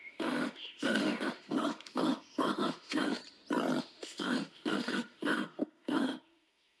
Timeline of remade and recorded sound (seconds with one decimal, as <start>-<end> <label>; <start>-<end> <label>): 0.0-3.2 remade; 3.2-3.8 recorded; 3.8-6.8 remade